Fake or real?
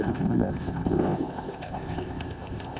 fake